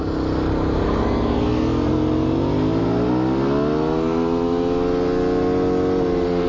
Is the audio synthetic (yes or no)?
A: no